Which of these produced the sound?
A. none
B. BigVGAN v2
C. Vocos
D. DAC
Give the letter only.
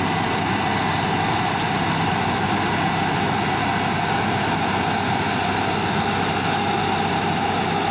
A